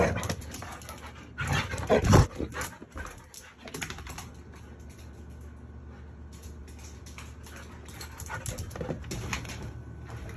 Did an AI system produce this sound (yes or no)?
no